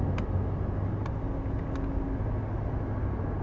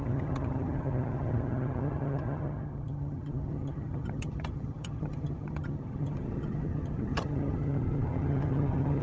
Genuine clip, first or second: first